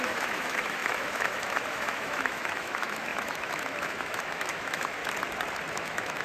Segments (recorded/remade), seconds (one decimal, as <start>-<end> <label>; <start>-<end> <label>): 0.0-5.0 remade; 5.0-5.7 recorded; 5.7-6.2 remade